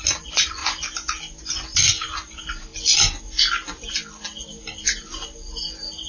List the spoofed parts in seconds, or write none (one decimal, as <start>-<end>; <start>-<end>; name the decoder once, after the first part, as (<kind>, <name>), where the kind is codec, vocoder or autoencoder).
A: none